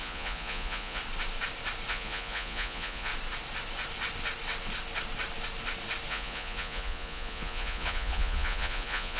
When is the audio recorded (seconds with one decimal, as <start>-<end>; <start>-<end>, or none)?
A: 1.0-1.9; 3.1-6.1